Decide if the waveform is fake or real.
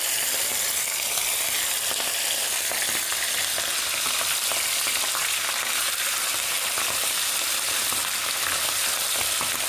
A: real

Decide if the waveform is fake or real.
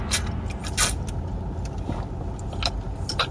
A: real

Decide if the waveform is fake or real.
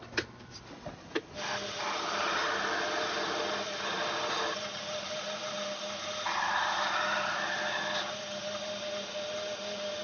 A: real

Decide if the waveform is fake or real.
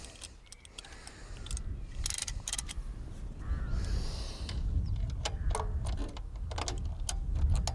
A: real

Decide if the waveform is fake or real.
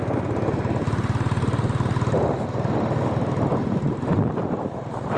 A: real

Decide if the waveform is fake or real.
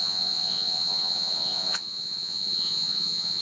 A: fake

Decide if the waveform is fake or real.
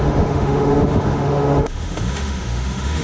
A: fake